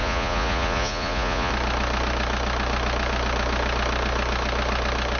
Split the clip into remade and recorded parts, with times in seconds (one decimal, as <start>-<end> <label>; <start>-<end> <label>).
0.0-1.5 remade; 1.5-5.2 recorded